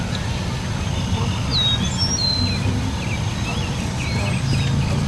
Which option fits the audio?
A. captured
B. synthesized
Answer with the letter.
A